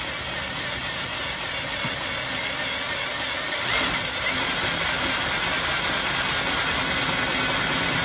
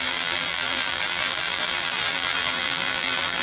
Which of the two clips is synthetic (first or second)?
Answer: second